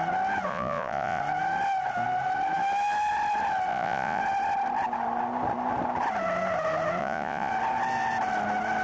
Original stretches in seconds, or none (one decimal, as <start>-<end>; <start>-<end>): 0.0-0.5; 1.2-3.7; 4.2-7.0; 7.5-8.8